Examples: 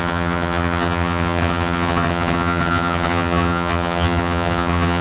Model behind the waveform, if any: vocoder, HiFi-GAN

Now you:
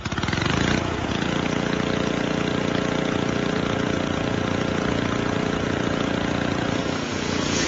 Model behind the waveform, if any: vocoder, Vocos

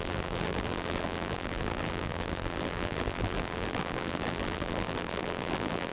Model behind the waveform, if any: vocoder, BigVGAN v2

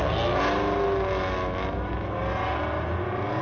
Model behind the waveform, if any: none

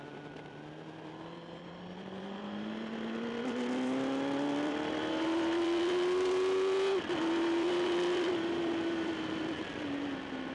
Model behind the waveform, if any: vocoder, BigVGAN v2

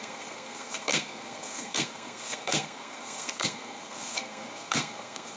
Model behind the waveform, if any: codec, SNAC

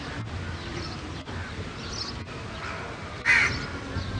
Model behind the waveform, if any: none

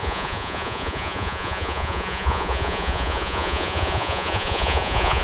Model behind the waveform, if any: vocoder, Vocos